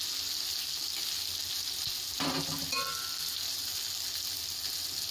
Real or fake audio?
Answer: real